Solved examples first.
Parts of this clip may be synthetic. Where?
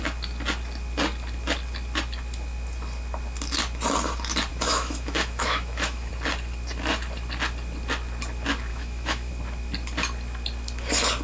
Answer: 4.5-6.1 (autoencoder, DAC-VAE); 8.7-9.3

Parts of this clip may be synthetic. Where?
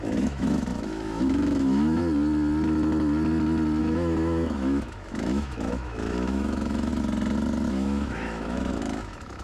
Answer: 0.0-2.0 (autoencoder, DAC-VAE); 3.8-6.9; 7.7-9.4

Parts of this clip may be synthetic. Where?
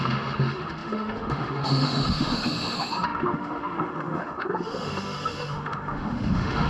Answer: 0.0-6.7 (autoencoder, DAC-VAE)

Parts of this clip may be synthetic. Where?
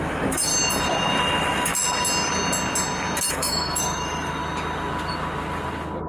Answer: 0.0-0.5 (autoencoder, DAC-VAE); 1.2-1.7; 3.3-4.4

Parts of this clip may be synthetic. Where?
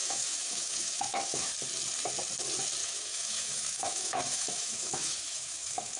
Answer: 0.0-1.5 (autoencoder, DAC-VAE); 2.8-6.0